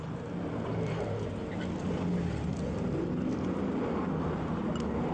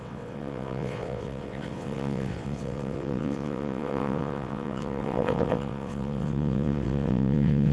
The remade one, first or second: second